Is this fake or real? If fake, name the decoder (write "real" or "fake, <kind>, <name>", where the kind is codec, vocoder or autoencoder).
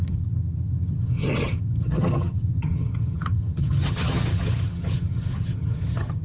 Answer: fake, vocoder, HiFi-GAN